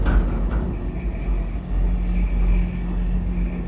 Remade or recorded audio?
recorded